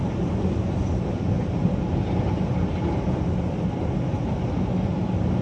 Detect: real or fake real